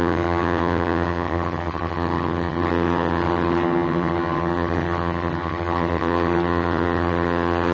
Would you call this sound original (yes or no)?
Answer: no